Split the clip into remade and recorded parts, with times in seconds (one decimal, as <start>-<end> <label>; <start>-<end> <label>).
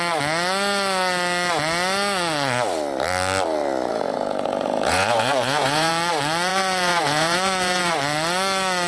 0.0-3.9 recorded; 3.9-5.9 remade; 5.9-6.5 recorded; 6.5-7.9 remade; 7.9-8.9 recorded